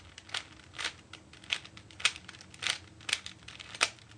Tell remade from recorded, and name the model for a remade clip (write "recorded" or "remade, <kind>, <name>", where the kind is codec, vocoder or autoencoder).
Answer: recorded